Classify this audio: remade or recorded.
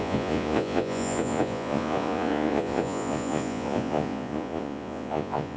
remade